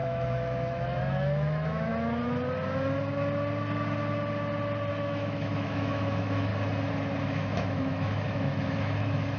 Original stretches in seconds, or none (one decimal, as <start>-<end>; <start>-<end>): 1.9-4.9; 6.5-7.2